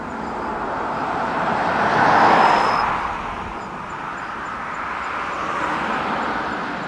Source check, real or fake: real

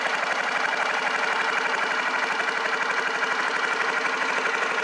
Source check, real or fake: real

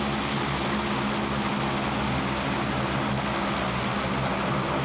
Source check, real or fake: real